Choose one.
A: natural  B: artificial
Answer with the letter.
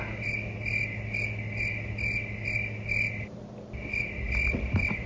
A